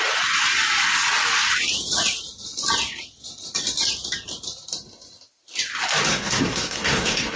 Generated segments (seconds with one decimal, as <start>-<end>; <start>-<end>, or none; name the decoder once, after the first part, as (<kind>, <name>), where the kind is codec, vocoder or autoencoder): 6.1-7.4 (codec, SNAC)